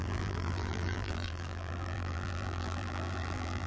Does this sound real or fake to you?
fake